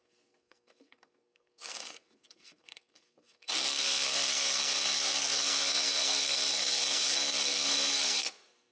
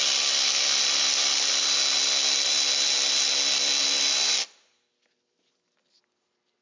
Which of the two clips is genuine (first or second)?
second